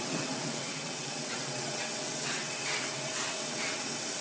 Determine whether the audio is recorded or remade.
remade